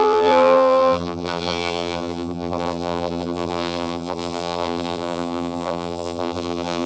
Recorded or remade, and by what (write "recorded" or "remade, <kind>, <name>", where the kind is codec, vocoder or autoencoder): remade, vocoder, BigVGAN v2